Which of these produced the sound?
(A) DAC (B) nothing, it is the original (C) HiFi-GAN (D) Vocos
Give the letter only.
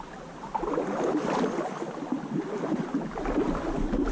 B